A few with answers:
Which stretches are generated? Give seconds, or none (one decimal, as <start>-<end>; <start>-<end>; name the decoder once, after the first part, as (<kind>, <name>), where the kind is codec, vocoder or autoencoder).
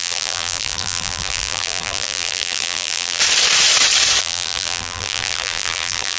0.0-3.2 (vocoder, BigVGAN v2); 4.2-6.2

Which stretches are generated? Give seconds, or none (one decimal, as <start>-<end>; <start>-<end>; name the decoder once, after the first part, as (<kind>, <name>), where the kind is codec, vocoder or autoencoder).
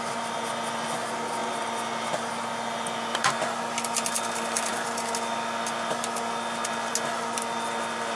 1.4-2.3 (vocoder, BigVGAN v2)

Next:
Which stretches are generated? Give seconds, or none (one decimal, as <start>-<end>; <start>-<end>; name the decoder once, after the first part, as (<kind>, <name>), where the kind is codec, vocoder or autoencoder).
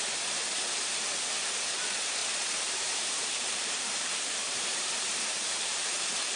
2.2-6.0 (vocoder, BigVGAN v2)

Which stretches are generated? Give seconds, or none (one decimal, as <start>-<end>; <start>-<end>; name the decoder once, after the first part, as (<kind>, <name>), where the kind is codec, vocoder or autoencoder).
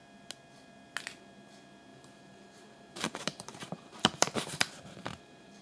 1.9-5.6 (vocoder, BigVGAN v2)